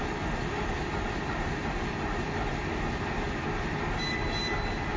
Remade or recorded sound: recorded